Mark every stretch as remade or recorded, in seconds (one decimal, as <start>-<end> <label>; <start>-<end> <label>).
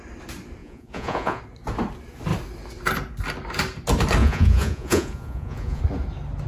0.0-0.6 recorded; 0.6-1.4 remade; 1.4-4.2 recorded; 4.2-5.8 remade; 5.8-6.5 recorded